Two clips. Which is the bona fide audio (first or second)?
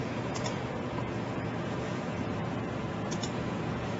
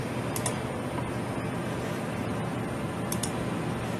second